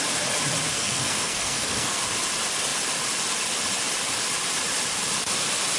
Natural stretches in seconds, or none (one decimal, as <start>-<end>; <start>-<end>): 0.0-0.7; 2.0-5.8